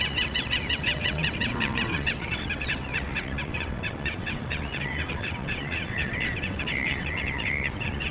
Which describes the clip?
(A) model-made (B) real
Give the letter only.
A